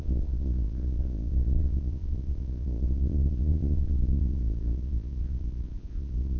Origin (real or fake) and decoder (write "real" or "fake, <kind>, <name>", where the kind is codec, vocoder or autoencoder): fake, vocoder, Vocos